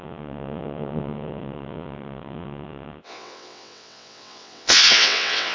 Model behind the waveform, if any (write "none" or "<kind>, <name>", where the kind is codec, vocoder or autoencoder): vocoder, WaveNeXt